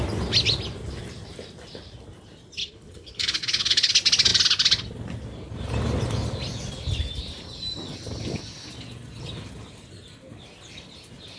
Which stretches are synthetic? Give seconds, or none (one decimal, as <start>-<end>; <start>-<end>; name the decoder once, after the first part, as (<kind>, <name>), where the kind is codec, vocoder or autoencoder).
2.6-3.9 (codec, HILCodec)